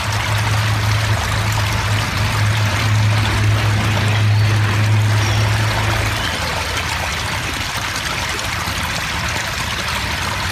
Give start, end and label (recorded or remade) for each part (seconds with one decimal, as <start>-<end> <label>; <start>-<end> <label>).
0.0-10.5 recorded